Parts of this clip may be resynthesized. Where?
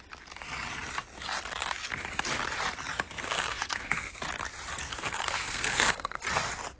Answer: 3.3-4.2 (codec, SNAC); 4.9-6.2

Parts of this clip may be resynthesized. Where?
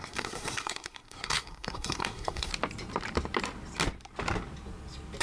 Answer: 0.0-2.5 (codec, SNAC)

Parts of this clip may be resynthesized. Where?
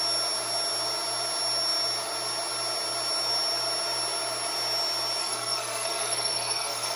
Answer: 5.2-7.0 (codec, SNAC)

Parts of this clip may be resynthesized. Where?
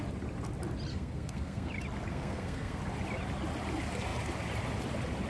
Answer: 0.9-1.7 (codec, SNAC); 2.1-2.8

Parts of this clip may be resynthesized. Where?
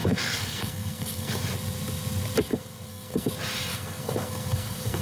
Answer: 0.0-1.4 (codec, SNAC); 2.5-3.3; 3.7-5.0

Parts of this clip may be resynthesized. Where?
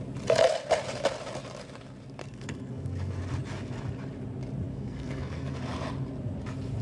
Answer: 2.2-3.2 (codec, SNAC); 4.7-5.6